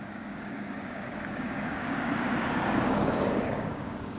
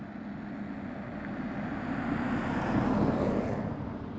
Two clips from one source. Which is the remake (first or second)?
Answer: first